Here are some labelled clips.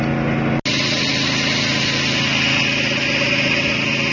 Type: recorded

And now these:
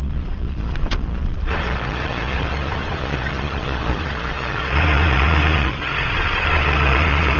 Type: remade